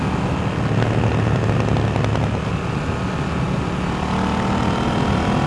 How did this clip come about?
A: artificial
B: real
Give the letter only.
B